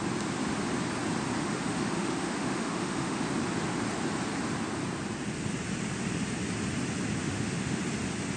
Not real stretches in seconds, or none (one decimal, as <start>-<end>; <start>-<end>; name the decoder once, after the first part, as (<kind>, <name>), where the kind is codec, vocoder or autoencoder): 1.4-3.2 (autoencoder, DAC-VAE); 7.2-7.8